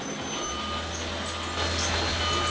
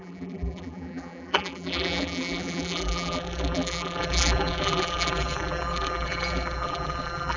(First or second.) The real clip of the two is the first